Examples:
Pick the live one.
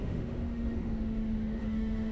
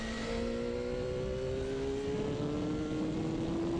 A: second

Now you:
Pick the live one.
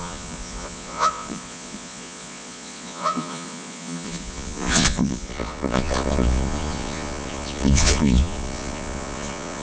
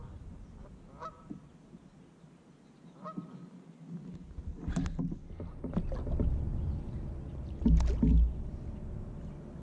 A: second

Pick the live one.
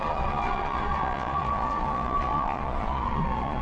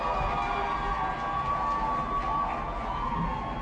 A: second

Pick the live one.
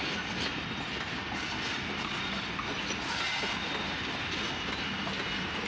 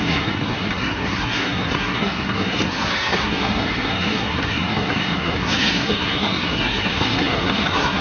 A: first